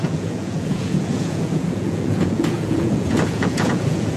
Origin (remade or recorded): remade